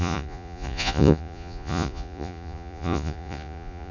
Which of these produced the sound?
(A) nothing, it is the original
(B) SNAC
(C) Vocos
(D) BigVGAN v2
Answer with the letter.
C